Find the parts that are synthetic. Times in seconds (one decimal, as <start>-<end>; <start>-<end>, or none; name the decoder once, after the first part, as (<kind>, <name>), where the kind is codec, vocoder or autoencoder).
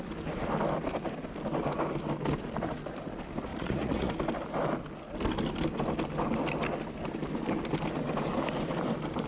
3.5-4.1 (vocoder, Vocos)